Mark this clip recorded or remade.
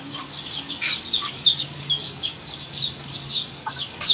remade